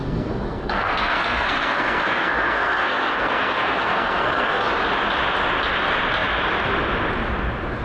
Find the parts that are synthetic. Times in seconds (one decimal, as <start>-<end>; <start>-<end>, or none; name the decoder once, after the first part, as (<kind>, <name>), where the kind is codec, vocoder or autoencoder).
0.0-4.7 (codec, SNAC)